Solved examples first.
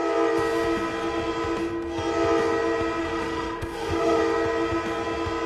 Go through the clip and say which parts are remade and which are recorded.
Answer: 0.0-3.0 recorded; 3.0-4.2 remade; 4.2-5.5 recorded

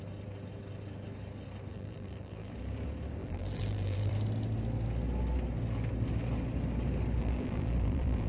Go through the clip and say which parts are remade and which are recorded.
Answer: 0.0-1.7 recorded; 1.7-2.5 remade; 2.5-3.2 recorded; 3.2-4.1 remade; 4.1-7.2 recorded; 7.2-8.3 remade

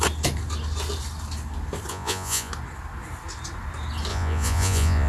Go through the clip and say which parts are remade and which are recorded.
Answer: 0.0-1.9 recorded; 1.9-2.5 remade; 2.5-4.1 recorded; 4.1-5.1 remade

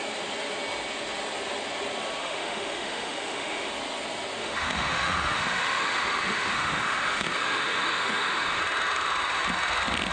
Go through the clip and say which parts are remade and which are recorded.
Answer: 0.0-2.2 recorded; 2.2-3.7 remade; 3.7-4.4 recorded; 4.4-8.6 remade; 8.6-10.1 recorded

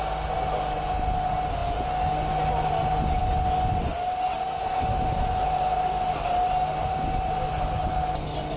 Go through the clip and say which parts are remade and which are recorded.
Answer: 0.0-8.6 recorded

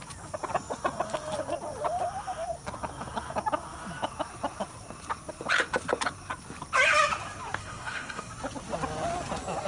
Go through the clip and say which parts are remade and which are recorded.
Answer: 0.0-7.6 recorded; 7.6-8.3 remade; 8.3-9.7 recorded

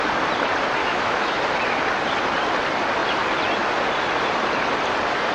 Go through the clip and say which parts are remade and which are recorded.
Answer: 0.0-0.8 recorded; 0.8-1.4 remade; 1.4-5.3 recorded

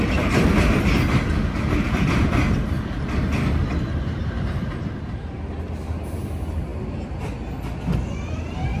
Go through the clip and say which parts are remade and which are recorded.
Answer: 0.0-8.8 recorded